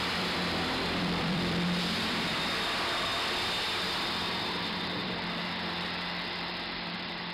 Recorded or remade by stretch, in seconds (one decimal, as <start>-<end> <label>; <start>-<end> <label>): 0.0-3.1 remade; 3.1-3.8 recorded; 3.8-7.3 remade